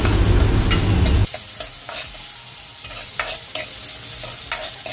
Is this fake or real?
real